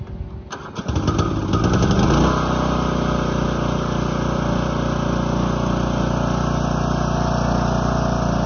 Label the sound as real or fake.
real